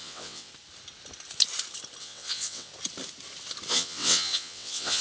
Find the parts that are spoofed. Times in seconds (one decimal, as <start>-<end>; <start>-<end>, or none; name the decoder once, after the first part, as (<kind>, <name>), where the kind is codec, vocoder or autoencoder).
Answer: 0.0-0.5 (vocoder, WaveNeXt); 2.0-2.7; 3.7-5.0